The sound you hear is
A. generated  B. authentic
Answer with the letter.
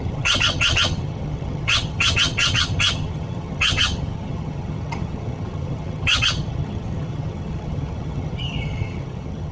A